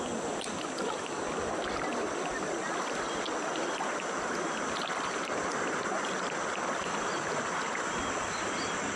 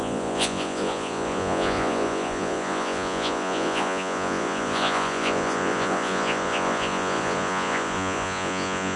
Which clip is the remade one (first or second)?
second